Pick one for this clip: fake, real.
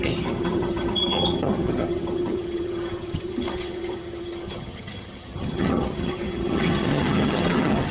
fake